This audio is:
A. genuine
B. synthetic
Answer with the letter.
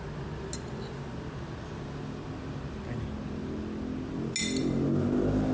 A